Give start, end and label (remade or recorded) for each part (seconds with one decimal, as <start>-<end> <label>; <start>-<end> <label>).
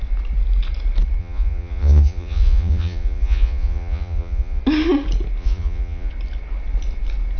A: 0.0-1.2 recorded; 1.2-4.6 remade; 4.6-5.4 recorded; 5.4-6.1 remade; 6.1-7.4 recorded